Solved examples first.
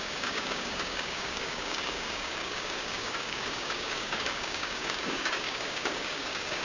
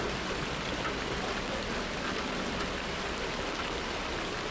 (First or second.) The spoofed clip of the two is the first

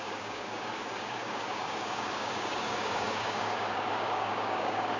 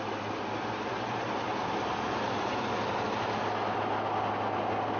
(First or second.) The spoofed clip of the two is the first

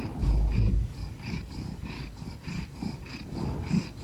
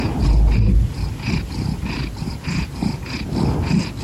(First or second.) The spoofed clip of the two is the first